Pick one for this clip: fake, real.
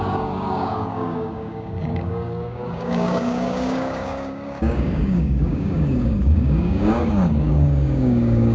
fake